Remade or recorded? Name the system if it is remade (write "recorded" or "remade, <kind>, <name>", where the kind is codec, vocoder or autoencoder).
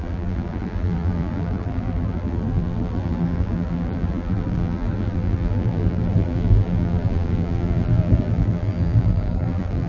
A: remade, vocoder, BigVGAN v2